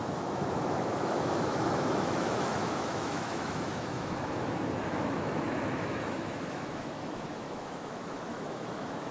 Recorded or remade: remade